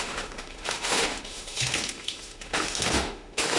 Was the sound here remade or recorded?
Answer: remade